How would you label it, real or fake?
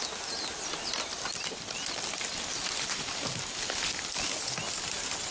real